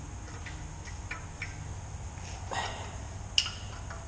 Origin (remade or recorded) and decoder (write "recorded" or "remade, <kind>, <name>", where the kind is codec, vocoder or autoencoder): recorded